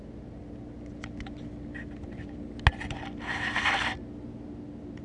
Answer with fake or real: real